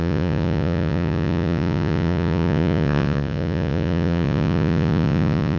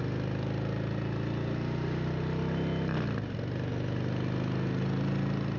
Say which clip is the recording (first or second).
second